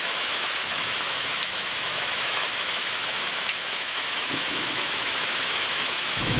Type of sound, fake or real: fake